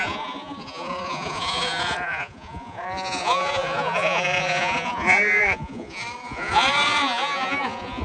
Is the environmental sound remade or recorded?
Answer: remade